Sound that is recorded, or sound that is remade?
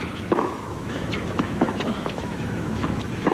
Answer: remade